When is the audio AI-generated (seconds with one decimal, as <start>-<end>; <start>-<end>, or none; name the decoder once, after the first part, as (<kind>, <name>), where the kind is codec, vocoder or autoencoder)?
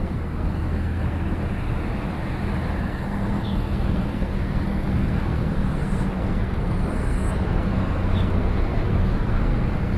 0.0-1.4 (codec, SNAC); 2.8-10.0